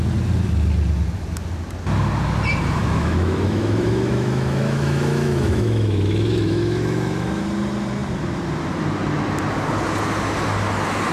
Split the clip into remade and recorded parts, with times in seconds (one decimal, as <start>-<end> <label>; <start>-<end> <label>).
0.0-2.8 recorded; 2.8-7.4 remade; 7.4-11.1 recorded